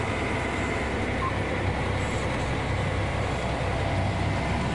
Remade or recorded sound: recorded